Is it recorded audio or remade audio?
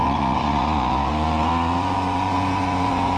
remade